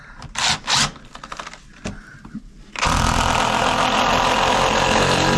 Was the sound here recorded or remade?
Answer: recorded